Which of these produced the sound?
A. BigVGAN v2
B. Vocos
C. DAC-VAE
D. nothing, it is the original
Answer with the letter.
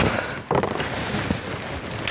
D